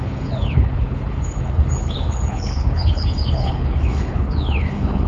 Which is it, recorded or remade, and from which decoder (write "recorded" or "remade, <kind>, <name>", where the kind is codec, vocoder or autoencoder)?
remade, codec, HILCodec